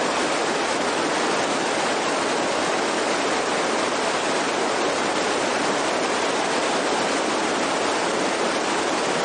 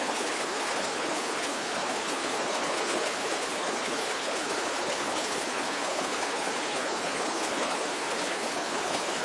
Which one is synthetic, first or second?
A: second